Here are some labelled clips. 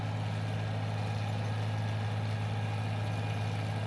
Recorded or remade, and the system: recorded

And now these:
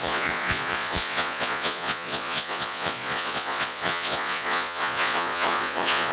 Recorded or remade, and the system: remade, vocoder, Vocos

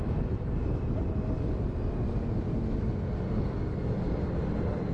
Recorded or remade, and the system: recorded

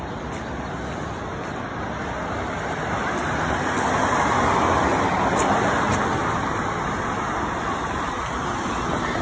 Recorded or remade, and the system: recorded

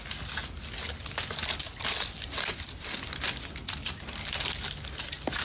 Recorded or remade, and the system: recorded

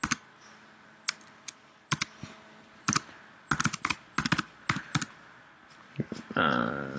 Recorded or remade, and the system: recorded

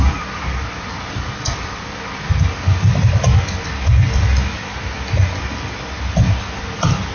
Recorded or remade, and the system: recorded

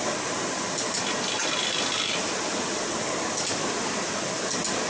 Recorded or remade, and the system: recorded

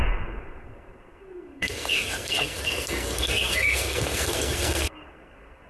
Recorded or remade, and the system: remade, codec, SNAC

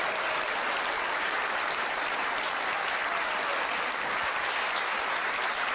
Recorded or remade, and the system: recorded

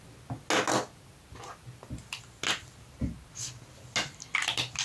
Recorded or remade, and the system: recorded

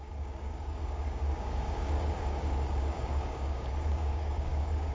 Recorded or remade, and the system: remade, codec, DAC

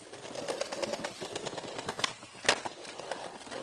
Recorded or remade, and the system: recorded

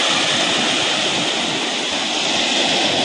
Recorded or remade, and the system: recorded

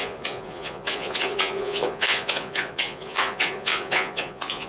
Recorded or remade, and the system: remade, vocoder, Vocos